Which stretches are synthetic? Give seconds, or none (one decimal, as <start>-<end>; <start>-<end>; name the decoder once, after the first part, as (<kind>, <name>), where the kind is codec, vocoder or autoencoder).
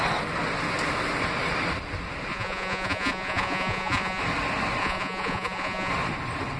2.3-4.2 (vocoder, Vocos); 4.8-5.9